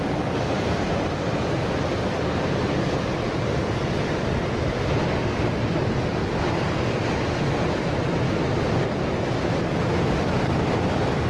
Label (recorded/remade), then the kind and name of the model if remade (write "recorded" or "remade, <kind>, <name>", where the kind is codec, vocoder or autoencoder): recorded